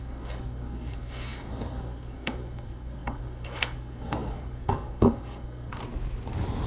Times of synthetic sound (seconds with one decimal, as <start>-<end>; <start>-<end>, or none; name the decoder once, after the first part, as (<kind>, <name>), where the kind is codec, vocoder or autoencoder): 0.0-5.8 (codec, SNAC)